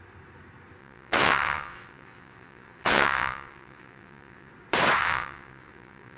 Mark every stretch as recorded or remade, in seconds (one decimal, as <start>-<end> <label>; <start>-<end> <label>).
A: 0.0-0.8 recorded; 0.8-4.5 remade; 4.5-5.0 recorded; 5.0-6.2 remade